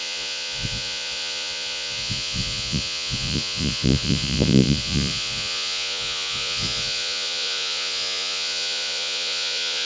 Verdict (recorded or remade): remade